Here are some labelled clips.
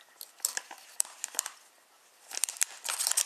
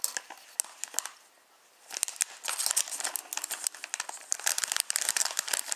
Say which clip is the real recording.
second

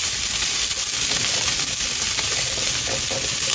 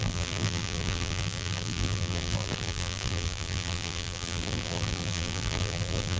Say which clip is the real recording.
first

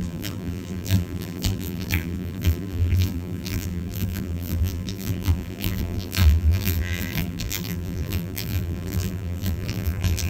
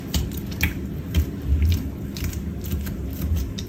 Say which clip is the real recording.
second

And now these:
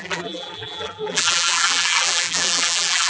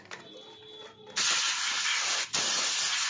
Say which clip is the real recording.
second